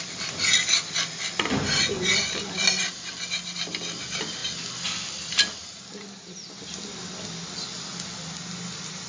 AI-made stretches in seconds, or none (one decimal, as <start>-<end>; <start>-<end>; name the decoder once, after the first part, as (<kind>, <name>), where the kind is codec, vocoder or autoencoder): none